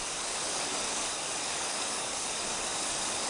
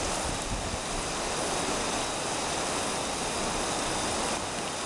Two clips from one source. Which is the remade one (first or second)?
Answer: first